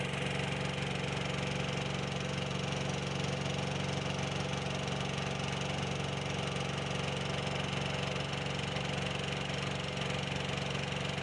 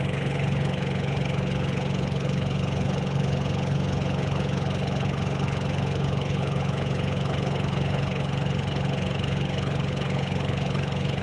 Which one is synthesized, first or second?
second